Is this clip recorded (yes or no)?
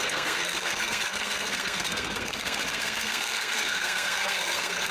no